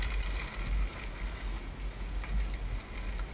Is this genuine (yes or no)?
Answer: yes